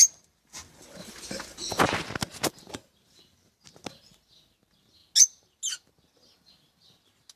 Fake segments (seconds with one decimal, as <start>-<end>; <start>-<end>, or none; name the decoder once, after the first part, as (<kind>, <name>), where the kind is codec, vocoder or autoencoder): none